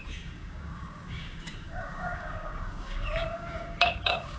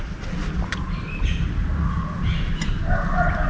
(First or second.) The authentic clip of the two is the second